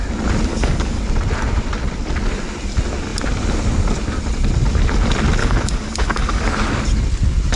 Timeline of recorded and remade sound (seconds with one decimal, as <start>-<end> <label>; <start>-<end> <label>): 0.0-0.5 recorded; 0.5-1.0 remade; 1.0-5.4 recorded; 5.4-6.5 remade; 6.5-7.6 recorded

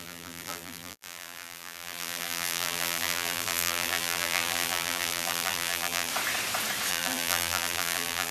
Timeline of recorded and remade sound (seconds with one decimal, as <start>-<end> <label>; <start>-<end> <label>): 0.0-6.1 remade; 6.1-6.9 recorded; 6.9-8.3 remade

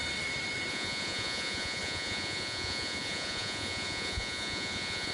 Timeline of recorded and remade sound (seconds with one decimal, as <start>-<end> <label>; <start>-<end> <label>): 0.0-0.7 recorded; 0.7-5.1 remade

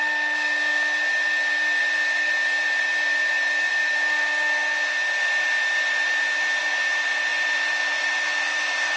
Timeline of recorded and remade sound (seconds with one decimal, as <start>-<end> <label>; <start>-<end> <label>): 0.0-9.0 recorded

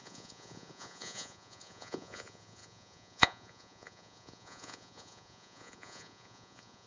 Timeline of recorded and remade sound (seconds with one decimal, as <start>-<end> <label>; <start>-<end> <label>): 0.0-6.9 remade

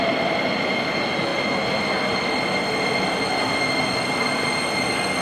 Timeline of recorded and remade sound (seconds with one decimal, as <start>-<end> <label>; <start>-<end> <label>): 0.0-5.2 recorded